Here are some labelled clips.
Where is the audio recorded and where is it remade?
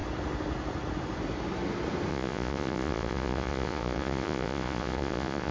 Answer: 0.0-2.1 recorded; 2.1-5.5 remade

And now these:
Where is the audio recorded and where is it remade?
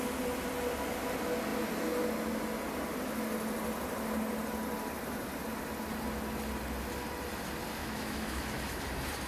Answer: 0.0-7.8 recorded; 7.8-8.8 remade; 8.8-9.3 recorded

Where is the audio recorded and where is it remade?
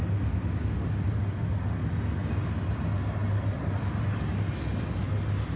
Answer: 0.0-5.6 recorded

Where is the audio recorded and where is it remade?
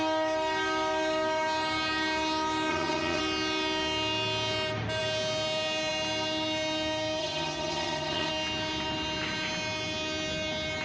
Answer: 0.0-2.7 recorded; 2.7-3.2 remade; 3.2-7.2 recorded; 7.2-8.3 remade; 8.3-10.8 recorded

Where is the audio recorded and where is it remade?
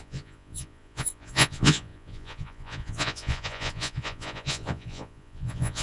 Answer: 0.0-5.8 remade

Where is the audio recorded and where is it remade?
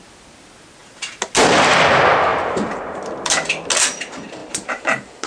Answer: 0.0-2.3 recorded; 2.3-3.0 remade; 3.0-4.4 recorded; 4.4-5.3 remade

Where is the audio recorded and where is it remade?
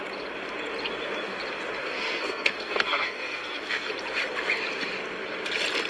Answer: 0.0-1.8 recorded; 1.8-3.9 remade; 3.9-5.9 recorded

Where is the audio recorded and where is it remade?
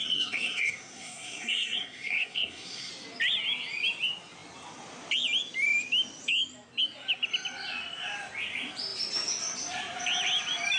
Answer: 0.0-2.9 remade; 2.9-10.8 recorded